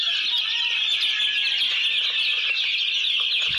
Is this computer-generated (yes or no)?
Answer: no